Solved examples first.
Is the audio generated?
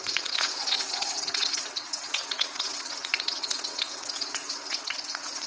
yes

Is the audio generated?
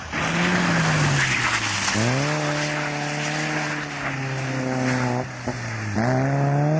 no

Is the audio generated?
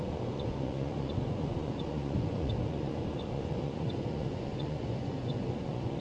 yes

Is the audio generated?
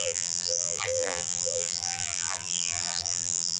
yes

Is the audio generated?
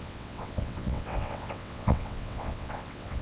yes